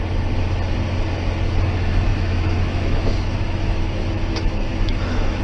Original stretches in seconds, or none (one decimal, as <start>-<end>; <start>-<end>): 0.0-2.1